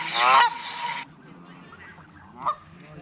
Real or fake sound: real